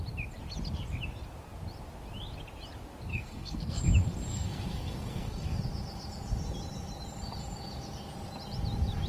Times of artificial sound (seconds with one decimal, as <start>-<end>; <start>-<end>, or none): 3.1-3.8; 4.3-5.6